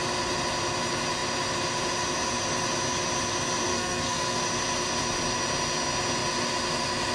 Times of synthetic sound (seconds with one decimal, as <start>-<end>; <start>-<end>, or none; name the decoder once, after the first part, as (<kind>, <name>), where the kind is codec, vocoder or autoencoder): 3.7-4.4 (codec, SNAC)

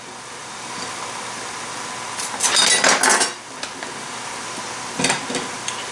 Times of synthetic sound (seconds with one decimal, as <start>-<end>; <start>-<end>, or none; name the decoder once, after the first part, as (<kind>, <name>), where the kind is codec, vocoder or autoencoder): none

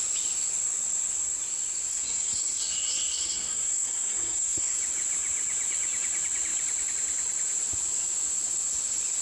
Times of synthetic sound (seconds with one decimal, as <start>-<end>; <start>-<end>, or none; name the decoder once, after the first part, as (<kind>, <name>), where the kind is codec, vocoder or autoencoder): 1.9-4.8 (codec, SNAC)